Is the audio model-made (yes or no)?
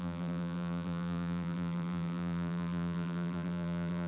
yes